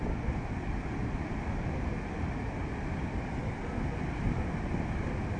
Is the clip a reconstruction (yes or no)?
no